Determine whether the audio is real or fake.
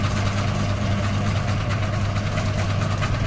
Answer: real